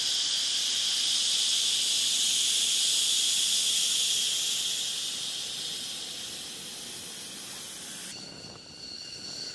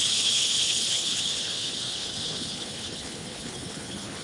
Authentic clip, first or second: first